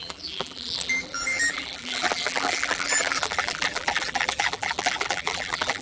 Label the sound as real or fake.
fake